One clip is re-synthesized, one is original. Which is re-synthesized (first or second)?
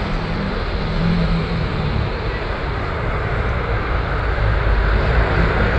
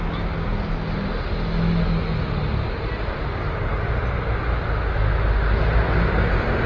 first